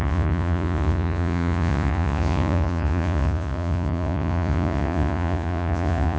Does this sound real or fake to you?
fake